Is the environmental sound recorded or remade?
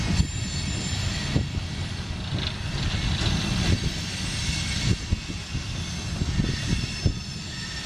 recorded